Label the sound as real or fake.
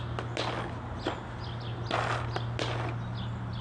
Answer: real